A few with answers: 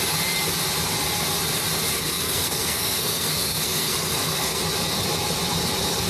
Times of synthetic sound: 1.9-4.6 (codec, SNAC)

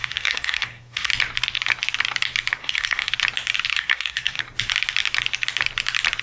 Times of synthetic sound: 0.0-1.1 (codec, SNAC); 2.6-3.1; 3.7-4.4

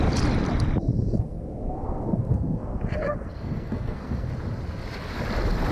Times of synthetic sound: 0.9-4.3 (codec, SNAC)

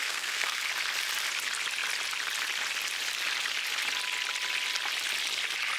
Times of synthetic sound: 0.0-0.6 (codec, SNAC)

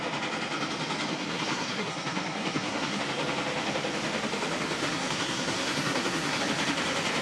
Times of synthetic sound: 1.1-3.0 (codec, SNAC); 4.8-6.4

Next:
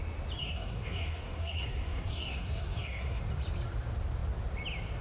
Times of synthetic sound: 0.4-3.2 (codec, SNAC)